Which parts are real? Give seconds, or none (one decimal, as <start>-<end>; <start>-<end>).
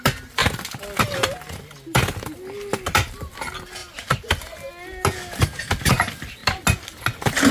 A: 0.0-3.8; 4.7-7.5